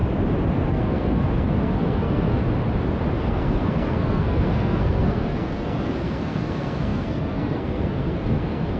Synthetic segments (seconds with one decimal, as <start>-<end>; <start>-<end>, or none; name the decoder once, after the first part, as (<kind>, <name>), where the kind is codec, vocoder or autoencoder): 0.7-2.4 (codec, SNAC); 3.2-8.8